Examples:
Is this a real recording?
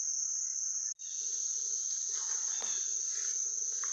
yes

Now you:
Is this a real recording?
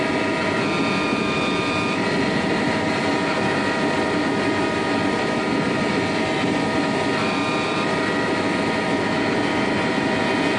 yes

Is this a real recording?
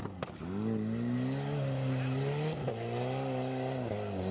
yes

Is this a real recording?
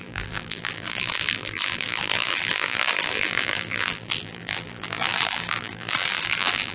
no